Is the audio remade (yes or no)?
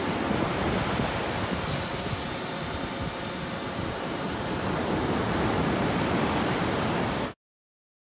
no